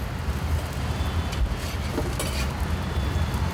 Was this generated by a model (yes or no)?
no